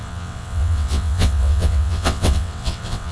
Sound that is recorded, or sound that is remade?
remade